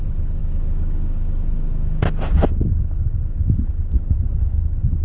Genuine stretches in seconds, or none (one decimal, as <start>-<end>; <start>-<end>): 0.0-5.0